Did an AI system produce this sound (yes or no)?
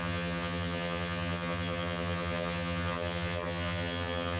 yes